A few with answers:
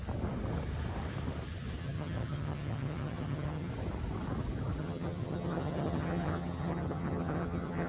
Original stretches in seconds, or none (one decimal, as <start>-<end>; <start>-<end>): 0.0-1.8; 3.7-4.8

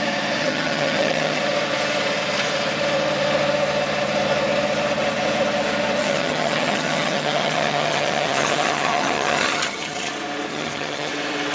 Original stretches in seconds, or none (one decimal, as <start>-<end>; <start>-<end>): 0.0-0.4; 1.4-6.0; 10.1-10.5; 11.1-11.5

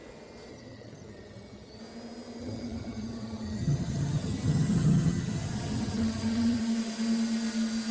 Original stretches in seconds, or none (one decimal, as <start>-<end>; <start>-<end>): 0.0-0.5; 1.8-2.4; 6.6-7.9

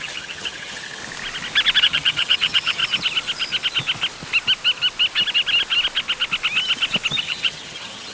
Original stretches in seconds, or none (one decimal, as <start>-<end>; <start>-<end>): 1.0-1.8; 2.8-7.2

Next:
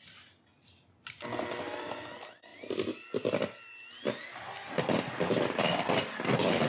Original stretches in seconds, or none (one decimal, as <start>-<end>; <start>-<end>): 0.0-6.7

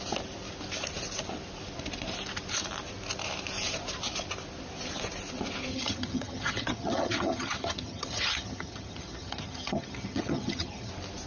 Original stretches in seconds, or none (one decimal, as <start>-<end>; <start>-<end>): 0.0-5.7; 10.9-11.3

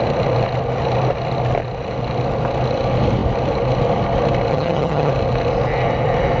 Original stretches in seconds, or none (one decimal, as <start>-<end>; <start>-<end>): 0.0-4.5; 5.1-6.4

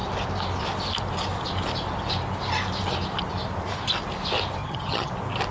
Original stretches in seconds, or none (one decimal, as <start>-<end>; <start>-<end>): 0.0-4.6; 5.1-5.5